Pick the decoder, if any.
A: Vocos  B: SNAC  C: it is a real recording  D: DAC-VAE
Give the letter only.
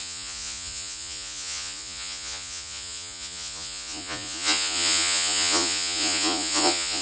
A